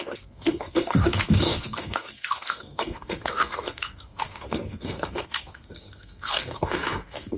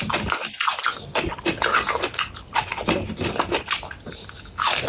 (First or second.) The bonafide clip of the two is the second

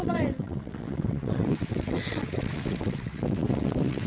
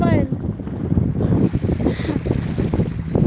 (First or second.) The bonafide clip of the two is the second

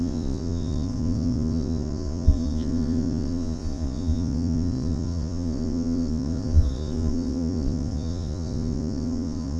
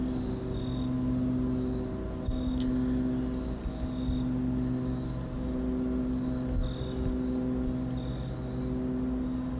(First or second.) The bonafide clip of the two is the second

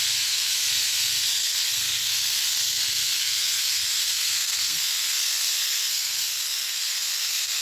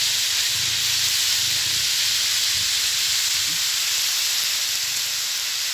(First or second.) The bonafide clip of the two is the second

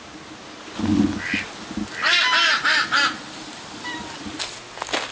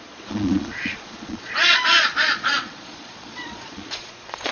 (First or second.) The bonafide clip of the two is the first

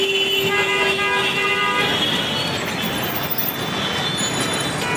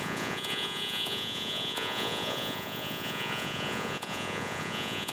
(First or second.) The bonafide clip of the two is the first